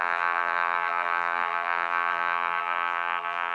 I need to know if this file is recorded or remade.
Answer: remade